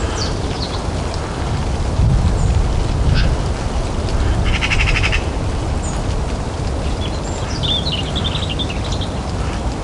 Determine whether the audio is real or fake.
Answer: real